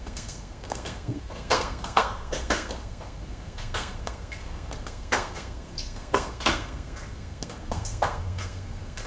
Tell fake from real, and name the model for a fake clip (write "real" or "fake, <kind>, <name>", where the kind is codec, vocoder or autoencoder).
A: fake, codec, SNAC